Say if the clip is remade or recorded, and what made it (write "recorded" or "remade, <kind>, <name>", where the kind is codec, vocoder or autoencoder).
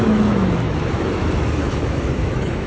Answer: remade, autoencoder, DAC-VAE